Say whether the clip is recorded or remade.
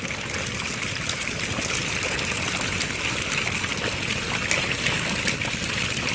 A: recorded